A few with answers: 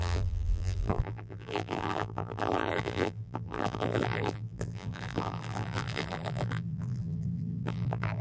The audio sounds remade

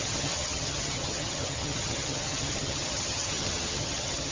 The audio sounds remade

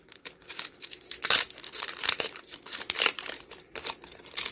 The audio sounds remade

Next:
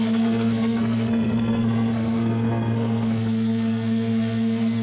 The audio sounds remade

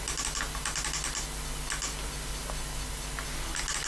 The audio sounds recorded